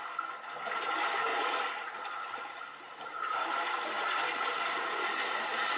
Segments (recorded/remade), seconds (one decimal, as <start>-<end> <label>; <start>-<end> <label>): 0.0-1.3 recorded; 1.3-3.6 remade; 3.6-5.8 recorded